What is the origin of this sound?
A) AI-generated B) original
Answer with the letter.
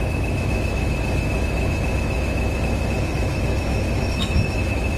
A